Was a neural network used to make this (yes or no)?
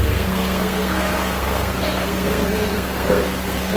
yes